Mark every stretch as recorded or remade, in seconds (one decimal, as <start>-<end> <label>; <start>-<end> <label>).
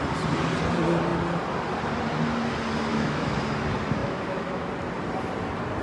0.0-2.9 recorded; 2.9-3.4 remade; 3.4-4.0 recorded; 4.0-4.7 remade; 4.7-5.8 recorded